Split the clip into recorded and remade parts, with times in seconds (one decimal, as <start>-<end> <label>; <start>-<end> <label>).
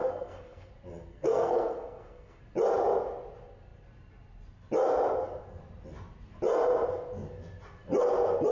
0.0-0.7 remade; 0.7-1.1 recorded; 1.1-2.4 remade; 2.4-8.5 recorded